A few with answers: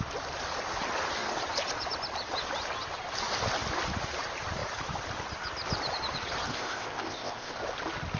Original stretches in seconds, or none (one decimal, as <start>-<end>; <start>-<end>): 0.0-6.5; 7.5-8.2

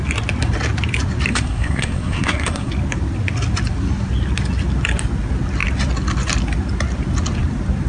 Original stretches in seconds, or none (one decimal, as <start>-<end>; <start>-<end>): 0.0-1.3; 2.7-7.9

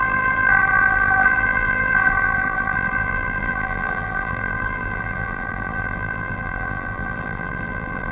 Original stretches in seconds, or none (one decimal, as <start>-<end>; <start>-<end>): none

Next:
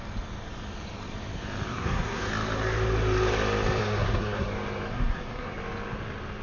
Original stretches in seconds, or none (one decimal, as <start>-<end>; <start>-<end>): 0.0-1.7; 2.3-3.8; 4.5-4.9; 5.5-6.4